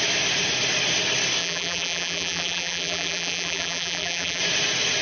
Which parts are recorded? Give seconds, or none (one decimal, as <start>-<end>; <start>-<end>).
0.0-1.4; 4.4-5.0